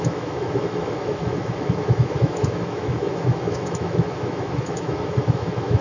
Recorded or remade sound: remade